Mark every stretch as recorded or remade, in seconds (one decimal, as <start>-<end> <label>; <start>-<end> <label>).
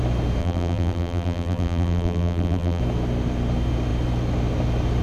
0.0-0.4 recorded; 0.4-2.8 remade; 2.8-5.0 recorded